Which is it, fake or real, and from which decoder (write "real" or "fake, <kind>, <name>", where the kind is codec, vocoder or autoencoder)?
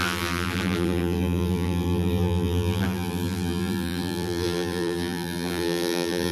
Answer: fake, vocoder, BigVGAN v2